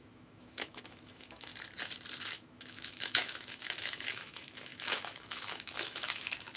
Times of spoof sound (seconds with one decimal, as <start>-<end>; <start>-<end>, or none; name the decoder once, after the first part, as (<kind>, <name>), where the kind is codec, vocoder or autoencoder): 0.0-1.5 (autoencoder, DAC-VAE); 2.2-6.6